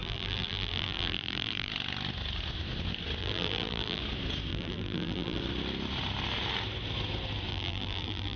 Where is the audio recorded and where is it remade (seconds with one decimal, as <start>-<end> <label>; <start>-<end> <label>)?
0.0-1.7 remade; 1.7-3.2 recorded; 3.2-4.0 remade; 4.0-4.5 recorded; 4.5-5.4 remade; 5.4-7.5 recorded; 7.5-8.4 remade